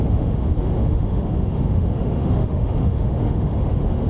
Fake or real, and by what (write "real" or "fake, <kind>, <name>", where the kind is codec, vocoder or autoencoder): fake, autoencoder, DAC-VAE